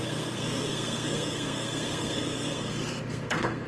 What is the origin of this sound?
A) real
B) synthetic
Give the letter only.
B